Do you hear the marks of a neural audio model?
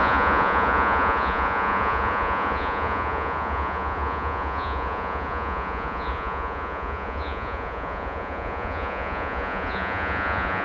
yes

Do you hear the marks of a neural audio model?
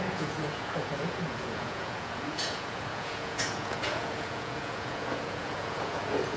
yes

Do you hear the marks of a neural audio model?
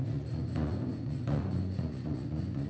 yes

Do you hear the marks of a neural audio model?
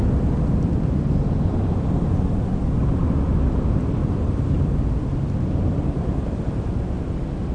no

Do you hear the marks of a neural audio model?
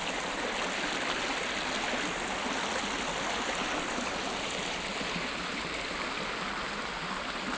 no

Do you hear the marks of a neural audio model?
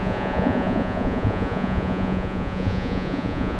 yes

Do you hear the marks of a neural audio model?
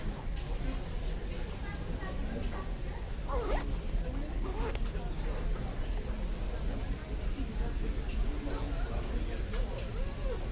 no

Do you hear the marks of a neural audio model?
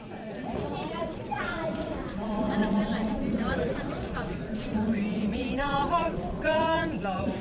yes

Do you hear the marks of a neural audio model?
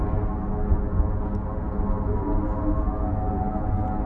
no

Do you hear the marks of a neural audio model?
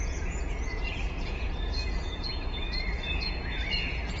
yes